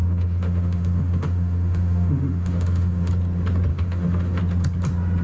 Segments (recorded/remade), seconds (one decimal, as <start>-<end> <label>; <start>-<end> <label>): 0.0-3.1 remade; 3.1-3.7 recorded; 3.7-4.4 remade; 4.4-5.2 recorded